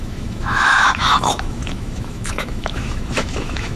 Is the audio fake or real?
fake